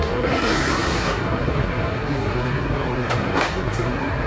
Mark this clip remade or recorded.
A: remade